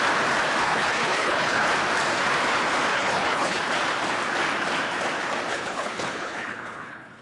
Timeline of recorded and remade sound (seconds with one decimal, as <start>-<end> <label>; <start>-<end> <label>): 0.0-0.6 recorded; 0.6-1.7 remade; 1.7-2.9 recorded; 2.9-3.6 remade; 3.6-5.5 recorded; 5.5-7.2 remade